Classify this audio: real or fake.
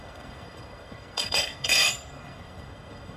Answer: fake